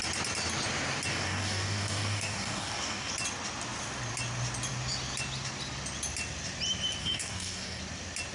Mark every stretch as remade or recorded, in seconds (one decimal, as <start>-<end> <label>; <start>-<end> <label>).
0.0-1.1 recorded; 1.1-3.1 remade; 3.1-7.0 recorded; 7.0-7.8 remade; 7.8-8.3 recorded